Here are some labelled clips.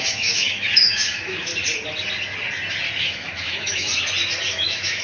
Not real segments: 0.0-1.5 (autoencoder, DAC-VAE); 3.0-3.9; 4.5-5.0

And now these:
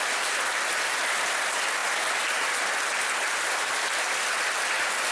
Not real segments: none

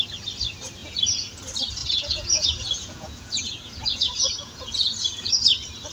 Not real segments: 0.8-1.3 (vocoder, Vocos); 1.8-5.3